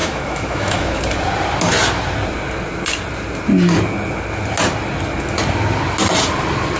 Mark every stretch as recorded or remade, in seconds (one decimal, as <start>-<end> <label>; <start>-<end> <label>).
0.0-1.0 remade; 1.0-6.8 recorded